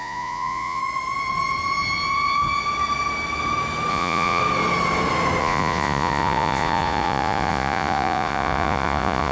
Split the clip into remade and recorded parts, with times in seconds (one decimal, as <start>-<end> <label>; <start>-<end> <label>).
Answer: 0.0-0.8 remade; 0.8-3.9 recorded; 3.9-4.4 remade; 4.4-5.4 recorded; 5.4-9.3 remade